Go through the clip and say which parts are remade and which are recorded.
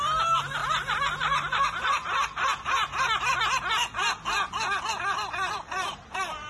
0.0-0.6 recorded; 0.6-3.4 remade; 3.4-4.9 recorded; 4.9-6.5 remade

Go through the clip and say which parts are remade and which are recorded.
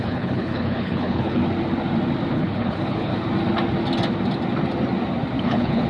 0.0-1.4 remade; 1.4-2.3 recorded; 2.3-3.1 remade; 3.1-5.4 recorded; 5.4-5.9 remade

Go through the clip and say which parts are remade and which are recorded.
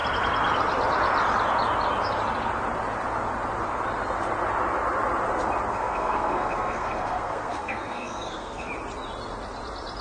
0.0-5.7 recorded; 5.7-8.7 remade; 8.7-10.0 recorded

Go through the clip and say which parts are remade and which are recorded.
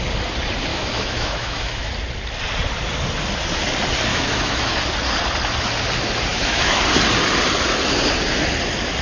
0.0-0.7 recorded; 0.7-1.9 remade; 1.9-4.1 recorded; 4.1-4.8 remade; 4.8-6.3 recorded; 6.3-6.8 remade; 6.8-9.0 recorded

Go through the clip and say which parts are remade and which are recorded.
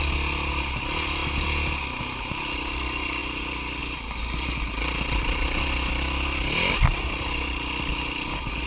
0.0-8.7 recorded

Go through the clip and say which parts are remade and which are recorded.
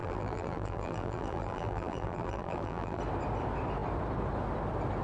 0.0-3.0 remade; 3.0-5.0 recorded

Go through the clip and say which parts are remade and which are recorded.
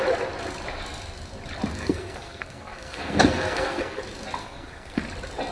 0.0-1.7 recorded; 1.7-4.0 remade; 4.0-4.4 recorded; 4.4-5.0 remade; 5.0-5.5 recorded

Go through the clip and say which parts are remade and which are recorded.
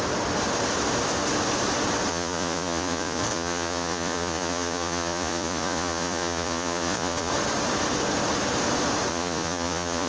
0.0-2.1 recorded; 2.1-7.3 remade; 7.3-9.1 recorded; 9.1-10.1 remade